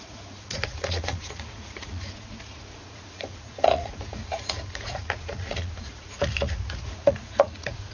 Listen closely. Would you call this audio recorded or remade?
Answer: remade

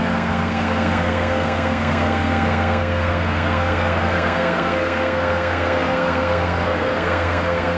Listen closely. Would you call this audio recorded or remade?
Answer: remade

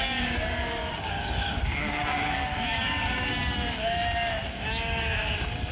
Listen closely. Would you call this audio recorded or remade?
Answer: remade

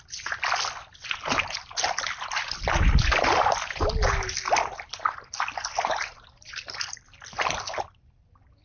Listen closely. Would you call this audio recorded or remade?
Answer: recorded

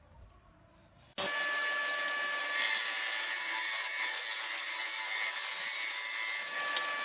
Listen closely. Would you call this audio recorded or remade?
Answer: recorded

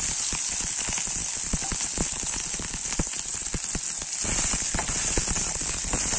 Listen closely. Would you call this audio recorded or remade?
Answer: recorded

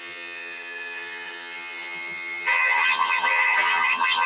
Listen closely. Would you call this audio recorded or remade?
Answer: remade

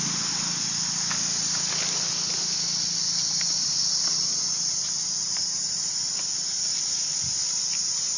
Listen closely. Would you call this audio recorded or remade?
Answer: recorded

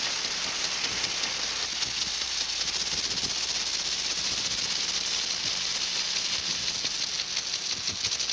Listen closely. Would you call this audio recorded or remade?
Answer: recorded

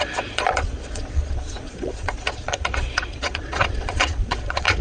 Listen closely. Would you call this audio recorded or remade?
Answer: remade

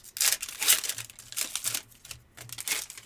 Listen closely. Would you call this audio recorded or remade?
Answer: recorded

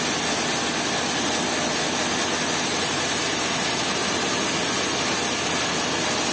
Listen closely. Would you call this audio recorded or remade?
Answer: recorded